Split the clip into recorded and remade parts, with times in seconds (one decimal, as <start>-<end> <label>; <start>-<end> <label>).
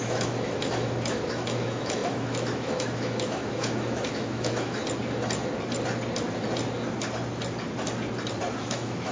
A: 0.0-4.8 remade; 4.8-8.6 recorded; 8.6-9.1 remade